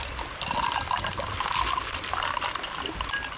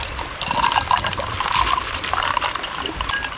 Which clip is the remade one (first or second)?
second